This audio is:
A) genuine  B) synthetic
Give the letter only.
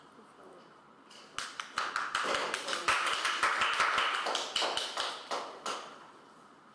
A